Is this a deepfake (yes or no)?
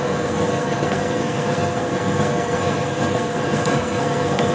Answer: yes